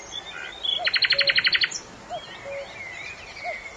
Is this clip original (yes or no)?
yes